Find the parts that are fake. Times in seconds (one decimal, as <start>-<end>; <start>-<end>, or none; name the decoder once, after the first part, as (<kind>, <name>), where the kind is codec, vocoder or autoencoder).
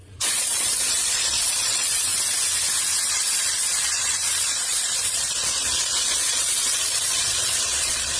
0.0-2.1 (vocoder, Vocos); 3.1-8.2